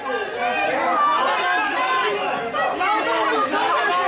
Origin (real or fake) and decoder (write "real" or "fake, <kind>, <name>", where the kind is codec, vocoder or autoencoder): real